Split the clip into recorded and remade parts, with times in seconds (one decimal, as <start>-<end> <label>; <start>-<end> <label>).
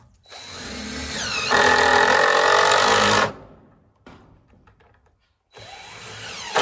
0.0-6.6 recorded